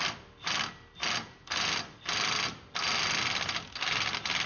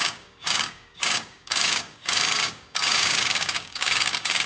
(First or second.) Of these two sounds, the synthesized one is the second